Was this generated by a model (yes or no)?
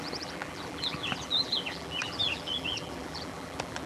yes